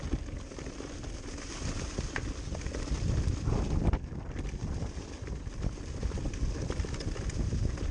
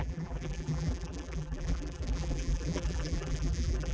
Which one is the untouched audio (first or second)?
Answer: first